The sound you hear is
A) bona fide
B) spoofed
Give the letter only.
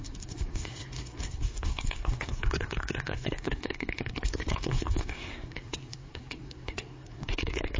B